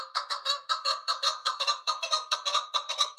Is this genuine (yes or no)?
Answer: no